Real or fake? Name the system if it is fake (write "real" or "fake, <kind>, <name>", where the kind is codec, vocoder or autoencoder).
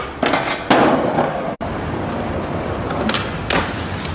real